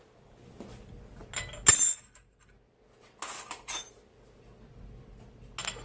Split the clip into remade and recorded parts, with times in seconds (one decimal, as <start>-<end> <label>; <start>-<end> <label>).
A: 0.0-5.8 recorded